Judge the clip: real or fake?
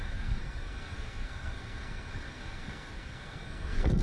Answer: fake